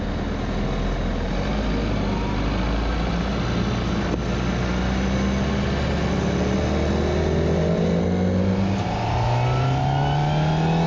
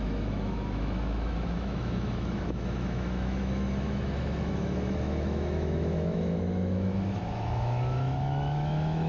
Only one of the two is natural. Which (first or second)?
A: first